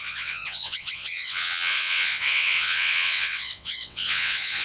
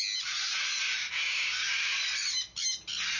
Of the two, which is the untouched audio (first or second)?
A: second